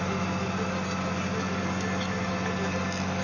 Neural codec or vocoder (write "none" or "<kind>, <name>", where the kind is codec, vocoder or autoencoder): none